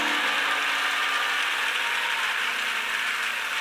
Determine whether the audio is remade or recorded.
recorded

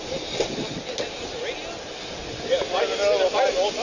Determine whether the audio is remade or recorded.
recorded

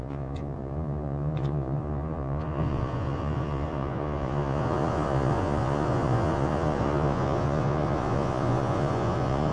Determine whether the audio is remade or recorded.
remade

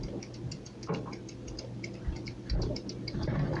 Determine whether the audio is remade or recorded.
recorded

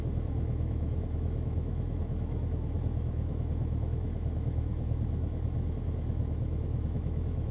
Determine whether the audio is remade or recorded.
remade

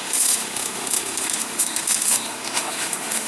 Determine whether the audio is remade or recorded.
remade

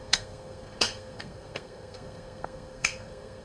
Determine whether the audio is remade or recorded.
remade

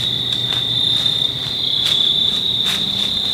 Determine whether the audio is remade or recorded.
remade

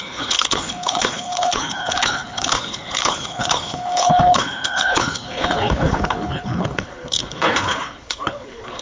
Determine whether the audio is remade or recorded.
remade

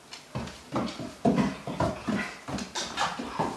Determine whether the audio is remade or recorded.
recorded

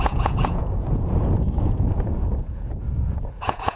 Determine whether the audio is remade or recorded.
remade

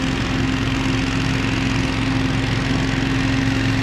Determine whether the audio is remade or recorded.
recorded